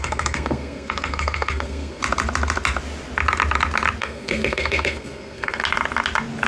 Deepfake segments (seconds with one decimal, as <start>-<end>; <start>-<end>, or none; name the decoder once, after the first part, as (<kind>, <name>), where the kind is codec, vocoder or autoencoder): 0.0-2.0 (codec, SNAC); 4.0-5.6